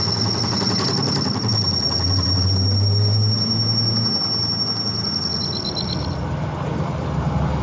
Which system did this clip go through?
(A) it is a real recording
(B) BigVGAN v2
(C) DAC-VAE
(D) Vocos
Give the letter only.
A